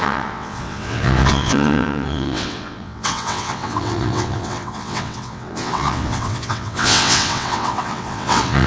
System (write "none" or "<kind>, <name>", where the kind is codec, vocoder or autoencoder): vocoder, WaveNeXt